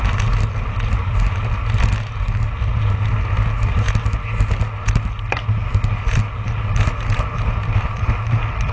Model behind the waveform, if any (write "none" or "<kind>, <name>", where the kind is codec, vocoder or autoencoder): none